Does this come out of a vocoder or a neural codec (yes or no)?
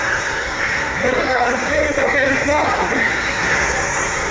yes